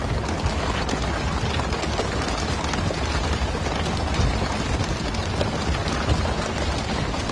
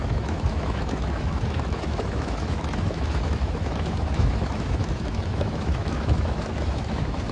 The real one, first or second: first